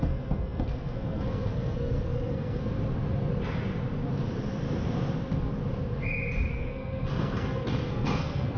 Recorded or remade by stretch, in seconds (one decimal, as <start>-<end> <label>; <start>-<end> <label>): 0.0-2.7 remade; 2.7-6.5 recorded; 6.5-8.6 remade